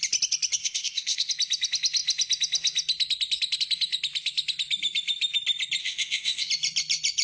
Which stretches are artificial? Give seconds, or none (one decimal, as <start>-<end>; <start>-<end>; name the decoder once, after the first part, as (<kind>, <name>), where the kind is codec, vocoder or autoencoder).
0.6-1.3 (codec, ZipCodec); 5.8-6.5